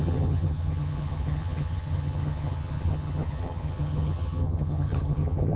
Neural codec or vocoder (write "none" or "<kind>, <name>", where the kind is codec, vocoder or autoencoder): vocoder, HiFi-GAN